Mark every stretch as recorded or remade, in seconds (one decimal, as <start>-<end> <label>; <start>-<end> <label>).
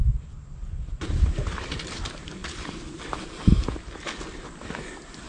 0.0-0.6 recorded; 0.6-2.0 remade; 2.0-5.3 recorded